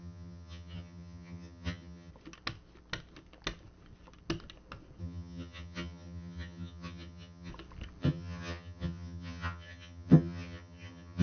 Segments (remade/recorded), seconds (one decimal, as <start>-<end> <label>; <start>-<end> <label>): 0.0-2.1 remade; 2.1-5.0 recorded; 5.0-7.5 remade; 7.5-8.0 recorded; 8.0-11.2 remade